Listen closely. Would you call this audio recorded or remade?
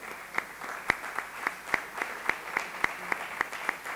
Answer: recorded